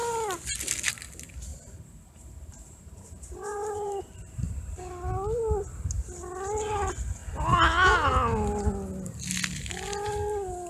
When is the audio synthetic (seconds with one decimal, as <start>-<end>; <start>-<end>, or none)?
1.5-4.5